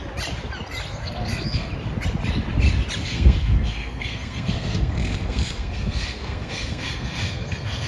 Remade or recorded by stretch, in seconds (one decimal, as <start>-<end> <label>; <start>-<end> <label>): 0.0-0.9 recorded; 0.9-1.7 remade; 1.7-3.0 recorded; 3.0-7.9 remade